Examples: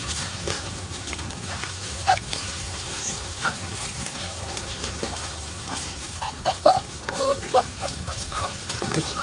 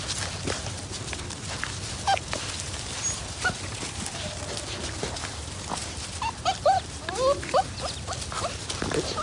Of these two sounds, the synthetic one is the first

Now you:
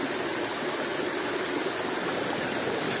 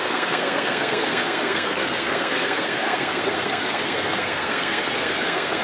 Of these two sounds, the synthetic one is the second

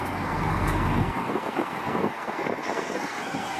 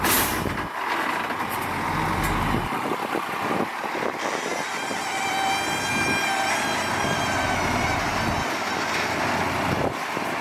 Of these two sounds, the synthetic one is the first